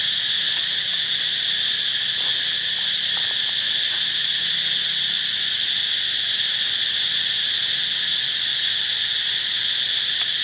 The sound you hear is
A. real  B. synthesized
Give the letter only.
A